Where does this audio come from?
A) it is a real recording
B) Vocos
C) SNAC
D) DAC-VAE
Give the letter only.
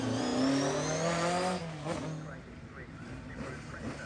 A